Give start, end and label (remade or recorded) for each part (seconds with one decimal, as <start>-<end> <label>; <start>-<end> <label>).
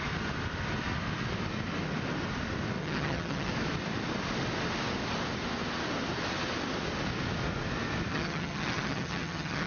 0.0-2.8 recorded; 2.8-3.5 remade; 3.5-8.1 recorded; 8.1-9.7 remade